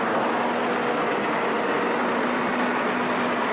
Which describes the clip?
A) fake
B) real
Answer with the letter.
B